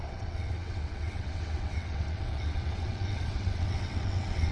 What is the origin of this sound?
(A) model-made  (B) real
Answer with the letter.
A